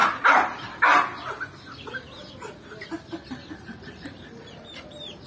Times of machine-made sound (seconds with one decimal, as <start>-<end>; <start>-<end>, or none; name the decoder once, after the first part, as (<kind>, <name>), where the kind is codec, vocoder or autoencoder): 3.2-5.3 (vocoder, BigVGAN v2)